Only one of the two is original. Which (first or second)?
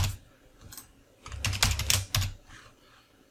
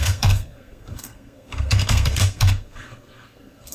first